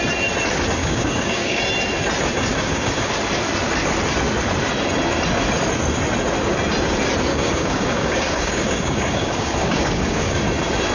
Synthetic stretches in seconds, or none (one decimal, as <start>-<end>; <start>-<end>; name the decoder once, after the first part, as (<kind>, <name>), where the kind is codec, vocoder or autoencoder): 0.8-1.6 (codec, DAC); 2.5-3.1; 7.3-10.4